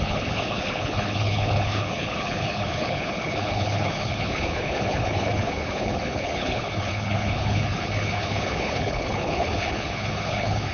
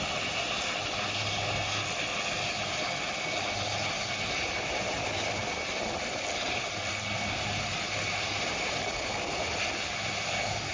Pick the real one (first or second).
second